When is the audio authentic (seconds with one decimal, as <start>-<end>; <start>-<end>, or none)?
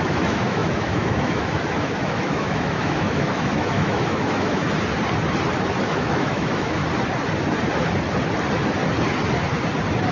4.6-5.8; 6.8-10.1